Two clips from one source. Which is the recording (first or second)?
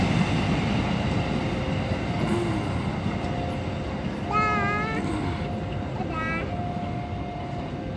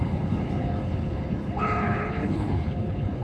first